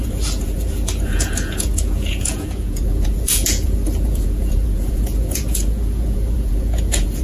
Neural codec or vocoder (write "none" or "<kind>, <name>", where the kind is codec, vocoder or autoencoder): vocoder, Vocos